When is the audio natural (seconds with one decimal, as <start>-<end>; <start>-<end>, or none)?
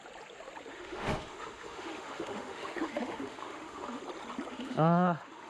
0.0-0.7; 4.0-4.5